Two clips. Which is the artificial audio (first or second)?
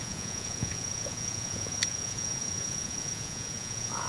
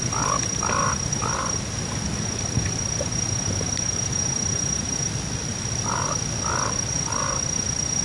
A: first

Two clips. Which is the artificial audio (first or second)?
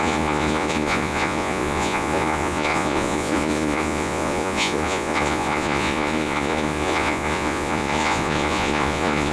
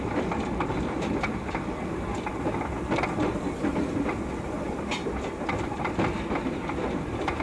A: first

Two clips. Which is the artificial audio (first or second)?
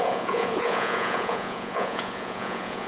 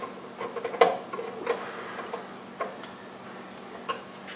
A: first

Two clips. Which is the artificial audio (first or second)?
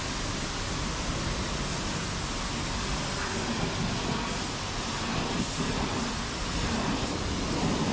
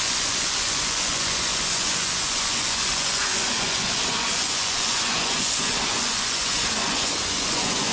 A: second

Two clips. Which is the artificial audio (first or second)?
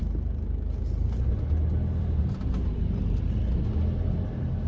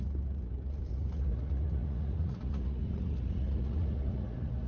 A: second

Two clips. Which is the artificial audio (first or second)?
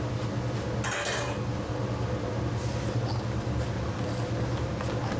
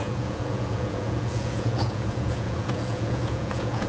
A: second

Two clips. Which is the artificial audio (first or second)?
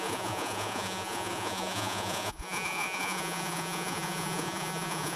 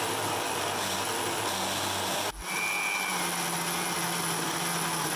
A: first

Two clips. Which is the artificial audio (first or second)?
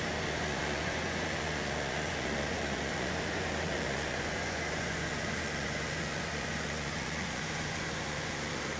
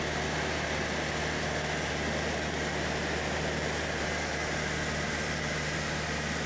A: first